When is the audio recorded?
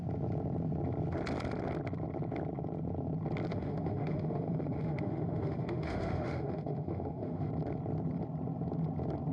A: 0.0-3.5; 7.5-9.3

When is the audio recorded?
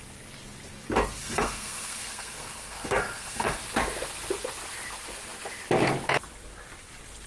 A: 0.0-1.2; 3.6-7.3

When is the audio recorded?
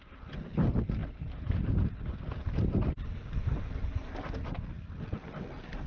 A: 0.0-5.9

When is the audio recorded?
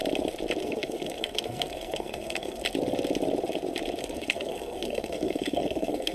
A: 0.0-0.6; 2.6-4.0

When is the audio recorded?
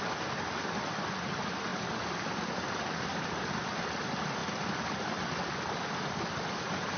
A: 0.0-7.0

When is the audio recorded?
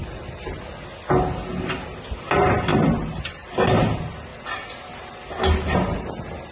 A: 0.0-2.7; 3.2-6.5